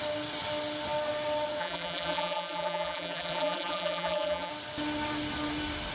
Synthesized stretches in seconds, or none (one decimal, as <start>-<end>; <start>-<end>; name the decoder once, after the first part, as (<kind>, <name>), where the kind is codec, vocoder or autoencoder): 1.6-4.5 (vocoder, BigVGAN v2)